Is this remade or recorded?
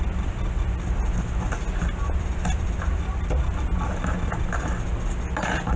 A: recorded